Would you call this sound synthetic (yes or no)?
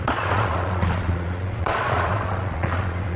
yes